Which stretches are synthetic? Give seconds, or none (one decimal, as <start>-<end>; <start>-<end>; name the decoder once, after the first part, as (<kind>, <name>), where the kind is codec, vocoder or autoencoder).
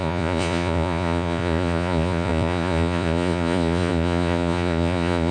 0.0-5.3 (vocoder, Vocos)